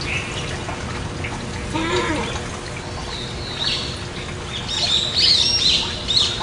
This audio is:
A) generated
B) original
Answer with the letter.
B